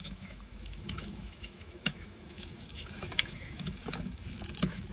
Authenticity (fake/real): fake